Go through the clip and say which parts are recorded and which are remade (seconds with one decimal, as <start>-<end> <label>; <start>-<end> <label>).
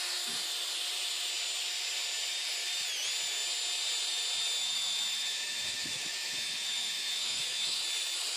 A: 0.0-4.6 recorded; 4.6-7.8 remade; 7.8-8.4 recorded